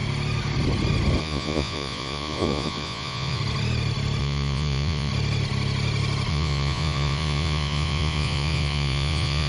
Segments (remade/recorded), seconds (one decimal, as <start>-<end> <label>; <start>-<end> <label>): 0.0-1.2 recorded; 1.2-3.4 remade; 3.4-4.2 recorded; 4.2-5.1 remade; 5.1-6.3 recorded; 6.3-9.5 remade